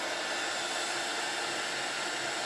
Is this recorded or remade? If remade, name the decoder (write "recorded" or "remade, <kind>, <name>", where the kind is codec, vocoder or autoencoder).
recorded